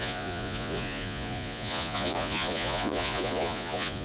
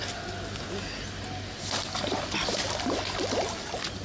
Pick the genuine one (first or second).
second